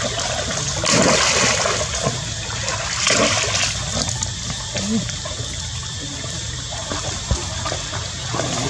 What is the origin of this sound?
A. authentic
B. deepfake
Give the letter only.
A